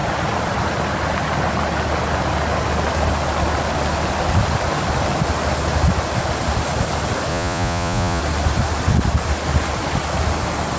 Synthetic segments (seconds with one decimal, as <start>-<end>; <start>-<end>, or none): 7.3-8.2